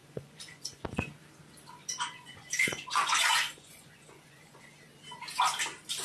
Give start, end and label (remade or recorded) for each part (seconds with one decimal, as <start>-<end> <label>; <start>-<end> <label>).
0.0-1.1 remade; 1.1-1.8 recorded; 1.8-4.6 remade; 4.6-6.0 recorded